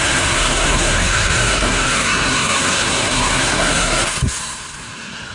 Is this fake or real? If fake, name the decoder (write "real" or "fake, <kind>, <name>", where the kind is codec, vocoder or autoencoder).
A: fake, codec, SNAC